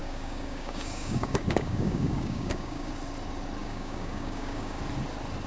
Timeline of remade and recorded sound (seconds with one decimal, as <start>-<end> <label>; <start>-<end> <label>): 0.0-2.9 remade; 2.9-3.6 recorded; 3.6-4.8 remade; 4.8-5.5 recorded